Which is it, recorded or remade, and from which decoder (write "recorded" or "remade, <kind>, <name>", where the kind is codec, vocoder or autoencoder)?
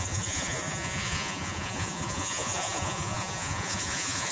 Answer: remade, vocoder, Vocos